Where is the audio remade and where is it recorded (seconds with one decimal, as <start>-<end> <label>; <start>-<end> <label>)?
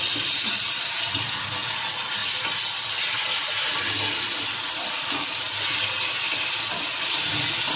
0.0-7.8 recorded